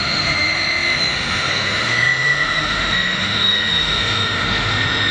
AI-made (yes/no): yes